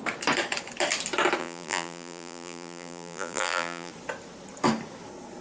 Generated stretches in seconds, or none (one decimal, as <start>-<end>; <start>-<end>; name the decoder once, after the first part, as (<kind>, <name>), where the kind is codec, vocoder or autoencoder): 1.4-3.9 (vocoder, BigVGAN v2)